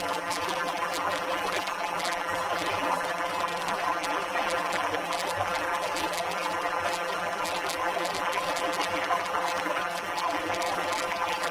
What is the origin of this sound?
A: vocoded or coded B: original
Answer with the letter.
A